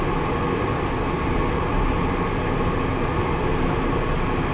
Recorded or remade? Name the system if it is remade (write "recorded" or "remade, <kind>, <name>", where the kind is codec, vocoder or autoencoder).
recorded